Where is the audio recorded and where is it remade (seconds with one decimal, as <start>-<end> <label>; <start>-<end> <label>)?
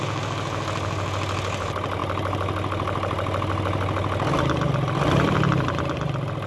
0.0-6.5 recorded